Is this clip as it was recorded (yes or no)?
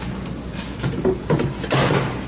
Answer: yes